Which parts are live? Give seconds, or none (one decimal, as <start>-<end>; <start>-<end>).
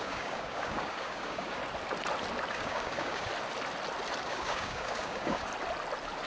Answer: 1.6-2.5; 3.3-4.2; 5.5-6.3